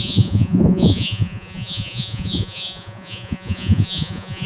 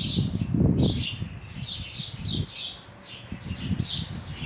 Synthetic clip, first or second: first